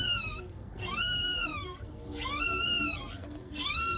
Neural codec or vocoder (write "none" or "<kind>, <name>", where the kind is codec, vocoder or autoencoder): codec, SNAC